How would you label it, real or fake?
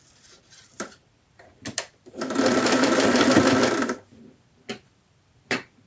fake